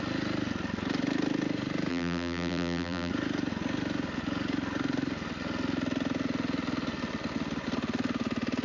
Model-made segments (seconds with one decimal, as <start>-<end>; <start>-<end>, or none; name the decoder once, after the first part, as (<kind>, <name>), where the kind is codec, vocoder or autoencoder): 1.9-3.1 (vocoder, BigVGAN v2)